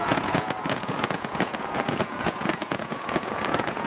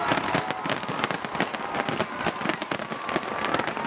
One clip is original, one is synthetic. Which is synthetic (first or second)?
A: first